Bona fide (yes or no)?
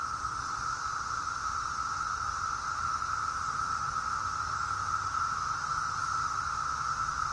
yes